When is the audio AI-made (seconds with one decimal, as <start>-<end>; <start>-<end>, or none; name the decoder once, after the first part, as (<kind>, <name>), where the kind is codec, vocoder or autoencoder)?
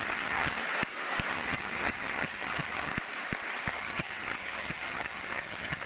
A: 0.0-0.6 (vocoder, HiFi-GAN); 1.3-2.9; 3.7-5.9